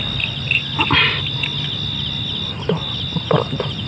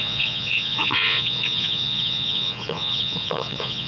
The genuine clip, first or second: first